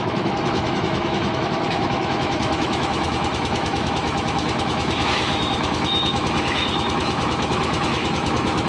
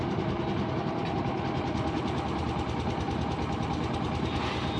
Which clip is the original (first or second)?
second